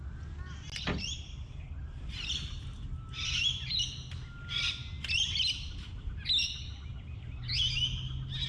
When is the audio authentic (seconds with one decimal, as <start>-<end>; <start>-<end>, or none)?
0.0-8.5